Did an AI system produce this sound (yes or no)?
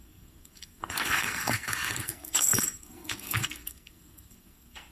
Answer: yes